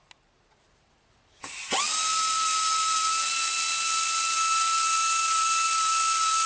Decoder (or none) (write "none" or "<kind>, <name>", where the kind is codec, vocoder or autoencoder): none